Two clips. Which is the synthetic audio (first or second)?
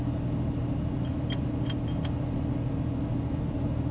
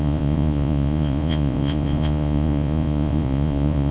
second